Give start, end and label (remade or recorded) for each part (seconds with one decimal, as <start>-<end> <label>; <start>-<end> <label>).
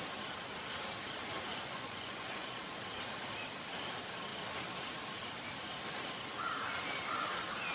0.0-1.5 recorded; 1.5-2.6 remade; 2.6-7.7 recorded